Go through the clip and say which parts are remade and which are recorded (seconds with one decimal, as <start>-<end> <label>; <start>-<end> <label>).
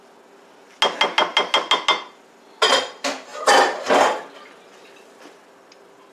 0.0-6.1 recorded